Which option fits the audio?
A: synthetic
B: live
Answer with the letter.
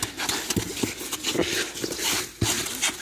B